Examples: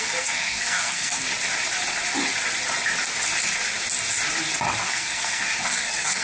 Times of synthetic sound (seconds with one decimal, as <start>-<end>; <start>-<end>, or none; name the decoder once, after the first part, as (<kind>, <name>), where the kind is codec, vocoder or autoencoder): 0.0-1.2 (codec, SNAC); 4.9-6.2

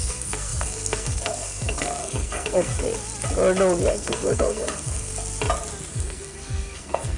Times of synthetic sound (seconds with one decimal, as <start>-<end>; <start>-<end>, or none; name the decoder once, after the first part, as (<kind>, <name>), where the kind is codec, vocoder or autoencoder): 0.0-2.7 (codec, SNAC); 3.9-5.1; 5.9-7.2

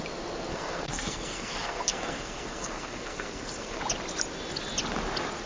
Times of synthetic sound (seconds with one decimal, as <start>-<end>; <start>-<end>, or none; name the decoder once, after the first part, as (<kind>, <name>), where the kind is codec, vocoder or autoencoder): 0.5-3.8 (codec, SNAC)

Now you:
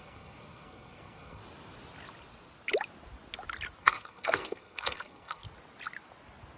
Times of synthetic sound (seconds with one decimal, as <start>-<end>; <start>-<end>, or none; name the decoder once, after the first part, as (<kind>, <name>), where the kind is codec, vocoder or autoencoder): 0.0-1.4 (codec, SNAC); 3.8-5.4

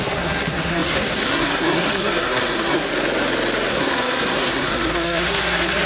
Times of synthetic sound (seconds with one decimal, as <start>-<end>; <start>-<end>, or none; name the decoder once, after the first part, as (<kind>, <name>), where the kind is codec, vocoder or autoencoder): 0.0-2.9 (codec, SNAC); 3.7-5.9